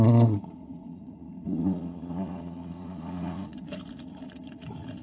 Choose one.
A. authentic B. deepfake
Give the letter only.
B